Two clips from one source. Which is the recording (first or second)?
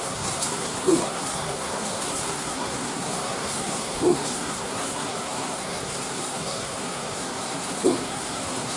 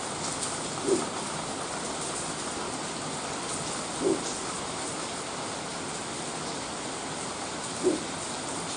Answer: second